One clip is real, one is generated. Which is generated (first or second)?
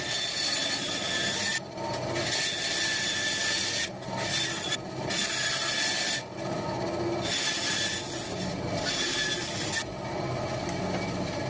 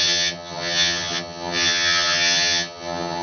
second